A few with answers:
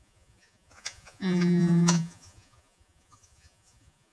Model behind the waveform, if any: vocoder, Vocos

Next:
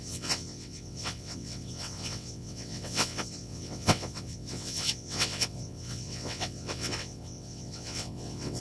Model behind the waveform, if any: vocoder, WaveNeXt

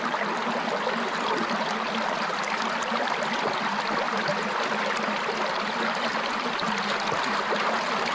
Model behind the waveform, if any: none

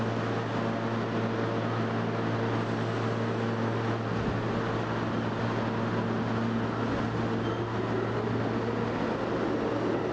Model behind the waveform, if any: none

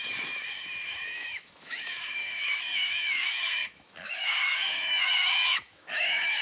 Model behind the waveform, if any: autoencoder, DAC-VAE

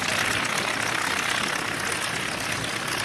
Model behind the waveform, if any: none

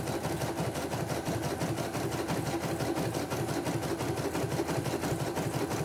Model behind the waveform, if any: none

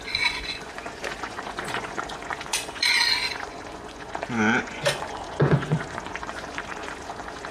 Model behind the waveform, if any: vocoder, Vocos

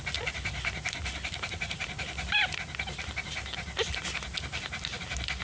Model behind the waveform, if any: none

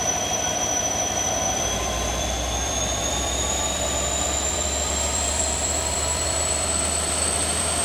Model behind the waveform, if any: vocoder, BigVGAN v2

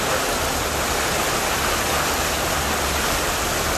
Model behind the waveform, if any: none